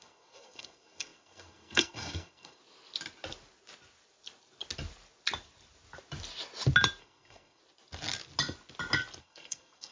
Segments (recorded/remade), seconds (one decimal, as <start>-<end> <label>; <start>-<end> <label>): 0.0-2.6 remade; 2.6-7.0 recorded; 7.0-7.6 remade; 7.6-9.2 recorded; 9.2-9.9 remade